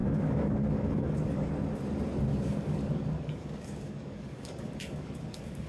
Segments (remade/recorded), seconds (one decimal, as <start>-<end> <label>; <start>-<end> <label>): 0.0-1.5 remade; 1.5-2.3 recorded; 2.3-5.7 remade

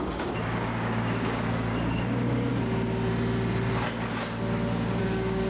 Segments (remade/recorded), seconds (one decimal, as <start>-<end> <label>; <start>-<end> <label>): 0.0-2.5 remade; 2.5-5.0 recorded; 5.0-5.5 remade

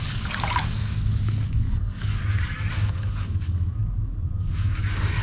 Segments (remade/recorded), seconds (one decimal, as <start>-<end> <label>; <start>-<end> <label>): 0.0-2.2 remade; 2.2-2.7 recorded; 2.7-3.8 remade; 3.8-4.4 recorded; 4.4-5.2 remade

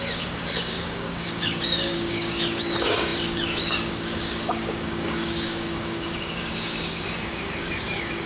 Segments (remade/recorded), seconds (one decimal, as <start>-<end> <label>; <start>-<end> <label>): 0.0-8.3 remade

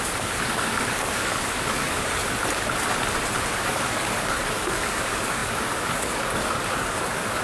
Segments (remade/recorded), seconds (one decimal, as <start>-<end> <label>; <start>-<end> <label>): 0.0-2.2 remade; 2.2-3.5 recorded; 3.5-7.4 remade